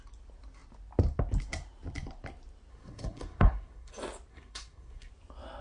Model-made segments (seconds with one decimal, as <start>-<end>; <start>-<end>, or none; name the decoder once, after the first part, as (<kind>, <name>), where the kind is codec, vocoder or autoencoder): 2.7-3.9 (codec, SNAC); 4.3-5.1